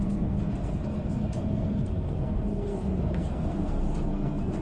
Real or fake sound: fake